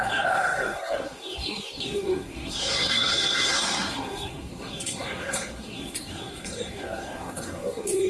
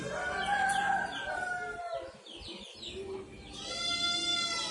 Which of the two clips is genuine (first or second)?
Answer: second